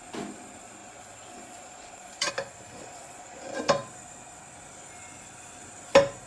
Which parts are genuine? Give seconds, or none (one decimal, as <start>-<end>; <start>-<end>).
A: 0.0-0.8; 2.3-2.8; 3.6-6.3